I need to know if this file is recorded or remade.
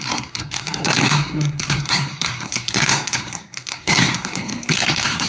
remade